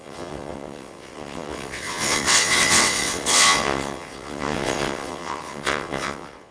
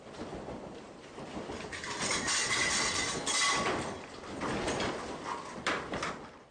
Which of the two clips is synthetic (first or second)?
first